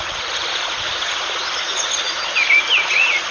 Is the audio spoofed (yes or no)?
no